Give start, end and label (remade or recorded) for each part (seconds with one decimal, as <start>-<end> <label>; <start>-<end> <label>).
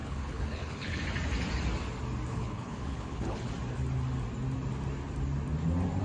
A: 0.0-1.0 remade; 1.0-2.3 recorded; 2.3-3.5 remade; 3.5-6.0 recorded